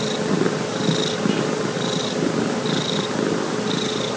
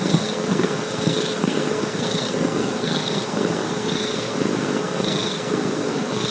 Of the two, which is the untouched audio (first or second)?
first